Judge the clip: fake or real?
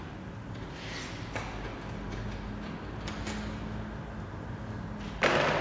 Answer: real